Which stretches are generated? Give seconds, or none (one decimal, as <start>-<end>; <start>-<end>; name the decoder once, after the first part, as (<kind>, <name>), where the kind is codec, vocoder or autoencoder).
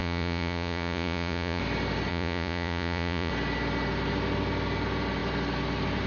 0.0-1.6 (vocoder, Vocos); 2.1-3.3